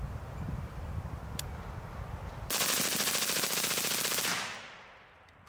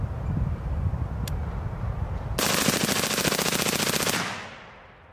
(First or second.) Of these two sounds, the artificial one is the first